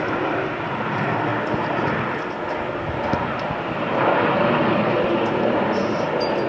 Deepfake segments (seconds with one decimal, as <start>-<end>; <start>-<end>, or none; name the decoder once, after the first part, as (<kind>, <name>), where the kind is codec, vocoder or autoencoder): none